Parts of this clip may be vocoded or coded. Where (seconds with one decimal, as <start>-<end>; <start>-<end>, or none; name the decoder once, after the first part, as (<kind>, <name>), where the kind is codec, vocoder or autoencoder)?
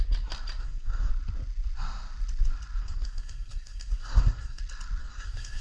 0.6-1.1 (codec, SNAC); 2.8-4.6; 5.0-5.6